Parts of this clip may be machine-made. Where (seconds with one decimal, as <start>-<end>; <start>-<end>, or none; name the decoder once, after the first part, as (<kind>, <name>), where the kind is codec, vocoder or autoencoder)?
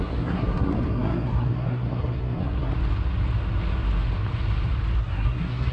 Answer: 0.0-2.7 (codec, SNAC); 5.0-5.7